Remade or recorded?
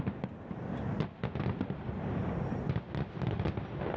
recorded